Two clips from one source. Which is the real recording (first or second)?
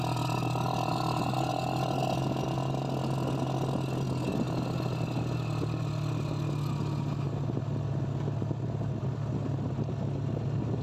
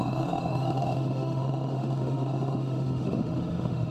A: first